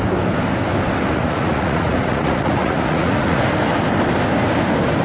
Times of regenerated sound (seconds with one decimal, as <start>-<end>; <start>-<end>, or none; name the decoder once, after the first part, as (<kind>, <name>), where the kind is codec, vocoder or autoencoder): 1.1-3.4 (vocoder, Vocos)